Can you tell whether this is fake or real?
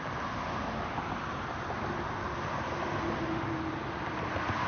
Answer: real